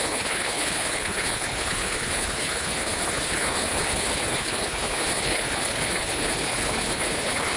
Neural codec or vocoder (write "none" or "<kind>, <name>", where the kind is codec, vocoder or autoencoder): codec, HILCodec